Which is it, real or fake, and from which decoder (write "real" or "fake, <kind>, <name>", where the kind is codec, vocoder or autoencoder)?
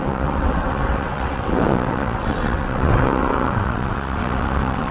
fake, vocoder, WaveNeXt